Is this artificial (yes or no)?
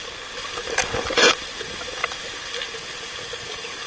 no